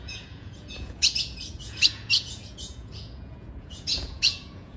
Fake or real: fake